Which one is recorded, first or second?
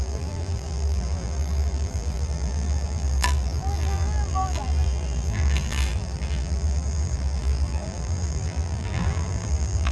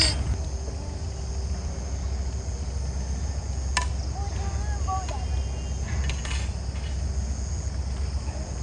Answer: second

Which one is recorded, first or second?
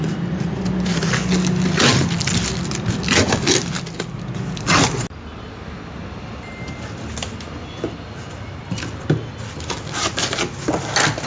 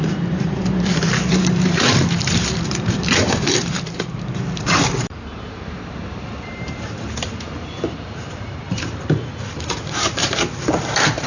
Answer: first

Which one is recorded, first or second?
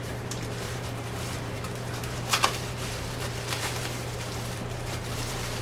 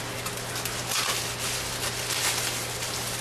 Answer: second